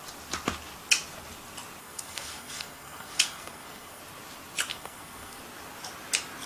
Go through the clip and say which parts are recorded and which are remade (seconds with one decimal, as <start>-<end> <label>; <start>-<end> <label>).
0.0-1.8 recorded; 1.8-4.0 remade; 4.0-4.7 recorded; 4.7-5.4 remade; 5.4-6.5 recorded